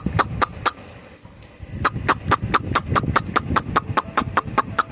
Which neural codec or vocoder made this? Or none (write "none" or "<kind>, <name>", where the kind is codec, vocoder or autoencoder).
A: none